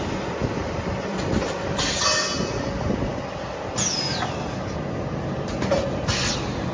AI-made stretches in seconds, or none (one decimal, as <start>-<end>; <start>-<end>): 0.4-2.0